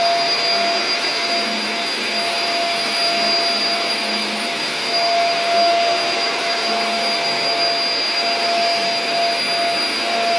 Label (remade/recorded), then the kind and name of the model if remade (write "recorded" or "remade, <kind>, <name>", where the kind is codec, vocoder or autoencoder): recorded